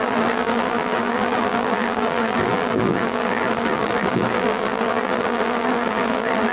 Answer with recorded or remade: remade